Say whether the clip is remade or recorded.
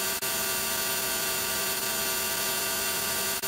recorded